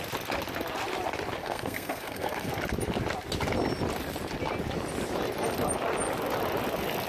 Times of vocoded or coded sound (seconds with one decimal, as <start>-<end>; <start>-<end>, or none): 1.4-2.5